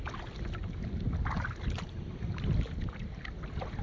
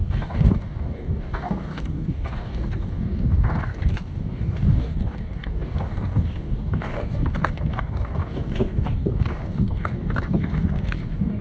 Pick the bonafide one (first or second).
first